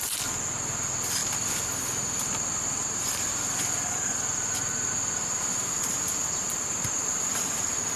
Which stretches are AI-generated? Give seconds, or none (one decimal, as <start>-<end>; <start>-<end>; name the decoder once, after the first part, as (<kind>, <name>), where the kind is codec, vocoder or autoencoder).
none